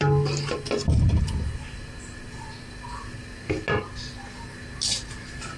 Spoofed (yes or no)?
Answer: no